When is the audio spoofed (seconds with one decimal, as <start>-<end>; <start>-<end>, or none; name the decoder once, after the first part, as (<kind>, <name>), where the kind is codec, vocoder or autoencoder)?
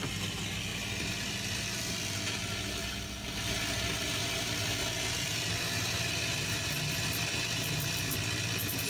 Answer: none